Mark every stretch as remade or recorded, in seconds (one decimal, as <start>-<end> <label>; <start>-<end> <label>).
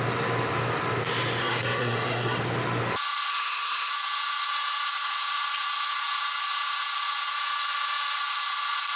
0.0-1.4 recorded; 1.4-2.4 remade; 2.4-3.3 recorded; 3.3-3.9 remade; 3.9-9.0 recorded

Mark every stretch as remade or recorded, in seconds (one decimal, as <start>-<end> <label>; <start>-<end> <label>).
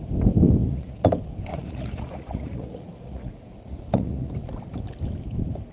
0.0-0.6 recorded; 0.6-1.1 remade; 1.1-1.5 recorded; 1.5-4.3 remade; 4.3-5.7 recorded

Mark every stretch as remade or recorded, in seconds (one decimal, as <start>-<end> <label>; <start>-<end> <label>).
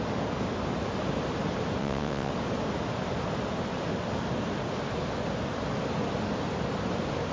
0.0-1.8 recorded; 1.8-2.3 remade; 2.3-7.3 recorded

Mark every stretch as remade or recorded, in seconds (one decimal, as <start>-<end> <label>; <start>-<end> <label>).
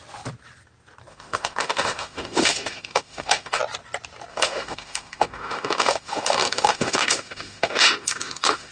0.0-1.1 recorded; 1.1-3.6 remade; 3.6-4.3 recorded; 4.3-8.7 remade